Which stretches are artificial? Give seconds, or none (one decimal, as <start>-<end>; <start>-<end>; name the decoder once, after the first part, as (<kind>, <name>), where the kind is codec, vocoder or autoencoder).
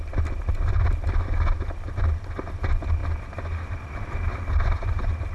none